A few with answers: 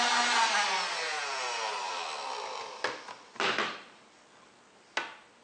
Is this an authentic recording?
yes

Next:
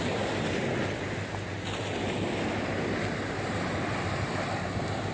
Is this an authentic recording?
yes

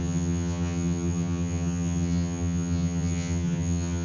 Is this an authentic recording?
no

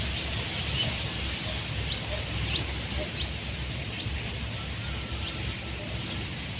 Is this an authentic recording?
yes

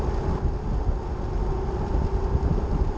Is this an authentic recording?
yes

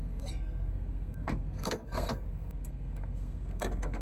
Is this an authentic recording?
no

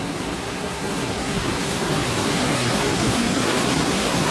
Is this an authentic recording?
no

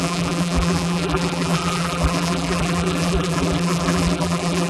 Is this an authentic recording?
no